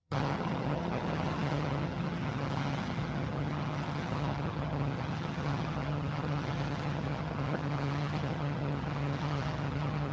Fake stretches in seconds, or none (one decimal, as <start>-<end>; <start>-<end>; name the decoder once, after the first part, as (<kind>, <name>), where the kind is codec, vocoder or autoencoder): 0.0-10.1 (vocoder, HiFi-GAN)